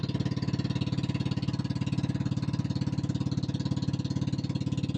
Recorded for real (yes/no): yes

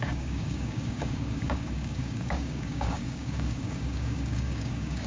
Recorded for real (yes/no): no